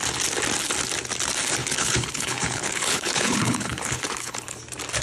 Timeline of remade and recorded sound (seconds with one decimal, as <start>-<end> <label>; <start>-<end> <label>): 0.0-1.6 recorded; 1.6-4.6 remade; 4.6-5.0 recorded